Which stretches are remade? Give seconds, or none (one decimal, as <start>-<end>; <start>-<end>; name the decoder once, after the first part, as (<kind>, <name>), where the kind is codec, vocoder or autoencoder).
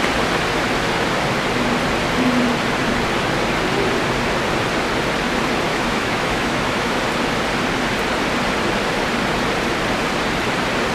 5.7-7.0 (autoencoder, DAC-VAE)